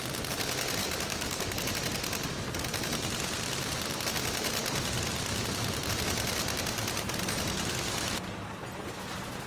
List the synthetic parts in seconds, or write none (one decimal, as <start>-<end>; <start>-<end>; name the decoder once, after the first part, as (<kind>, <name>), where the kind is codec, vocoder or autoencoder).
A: 0.8-1.7 (codec, DAC)